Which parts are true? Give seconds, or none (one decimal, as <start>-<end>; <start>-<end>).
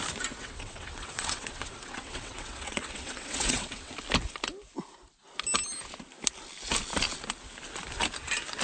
0.0-0.4; 3.9-8.6